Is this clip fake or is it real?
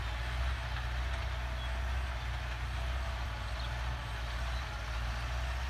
real